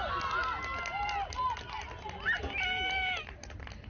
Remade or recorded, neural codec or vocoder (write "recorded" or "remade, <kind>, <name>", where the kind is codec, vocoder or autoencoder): recorded